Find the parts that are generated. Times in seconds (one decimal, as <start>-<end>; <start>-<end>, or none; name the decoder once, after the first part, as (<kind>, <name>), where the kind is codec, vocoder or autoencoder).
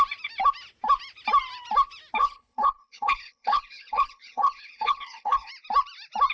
2.2-5.5 (codec, HILCodec)